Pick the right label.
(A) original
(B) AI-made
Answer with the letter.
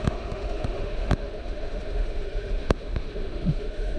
B